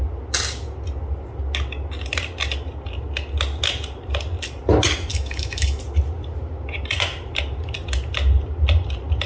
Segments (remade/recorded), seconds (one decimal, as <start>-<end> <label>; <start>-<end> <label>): 0.0-5.1 recorded; 5.1-5.8 remade; 5.8-9.3 recorded